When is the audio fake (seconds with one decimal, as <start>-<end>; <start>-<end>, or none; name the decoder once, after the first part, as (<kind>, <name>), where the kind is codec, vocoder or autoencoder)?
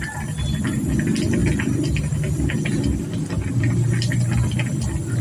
none